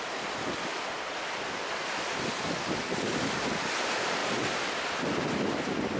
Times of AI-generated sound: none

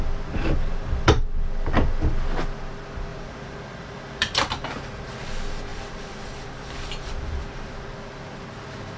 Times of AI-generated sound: 3.1-4.7 (vocoder, BigVGAN v2); 5.7-9.0

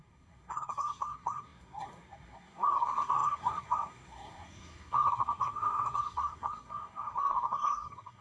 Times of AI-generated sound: 0.0-8.2 (codec, SNAC)

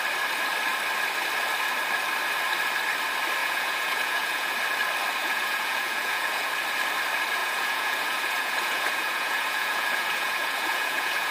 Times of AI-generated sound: 3.4-4.5 (vocoder, Vocos); 5.2-6.5; 7.4-11.3

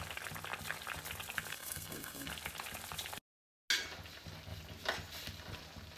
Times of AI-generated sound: 1.5-2.3 (codec, SNAC)

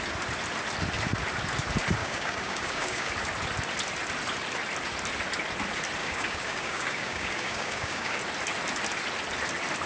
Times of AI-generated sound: 2.0-3.1 (codec, DAC); 6.0-8.2

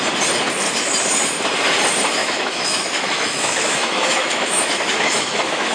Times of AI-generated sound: 2.2-5.7 (autoencoder, DAC-VAE)